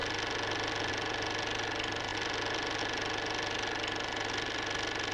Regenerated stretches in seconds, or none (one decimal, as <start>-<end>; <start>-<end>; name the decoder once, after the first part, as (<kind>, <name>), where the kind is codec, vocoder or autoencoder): none